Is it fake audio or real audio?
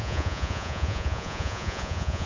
fake